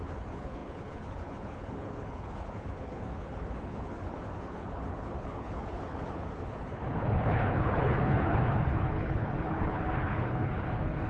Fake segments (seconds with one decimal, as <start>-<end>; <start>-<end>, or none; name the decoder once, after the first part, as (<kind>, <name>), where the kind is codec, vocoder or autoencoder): 0.0-11.1 (codec, HILCodec)